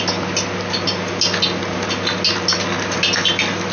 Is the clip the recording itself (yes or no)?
yes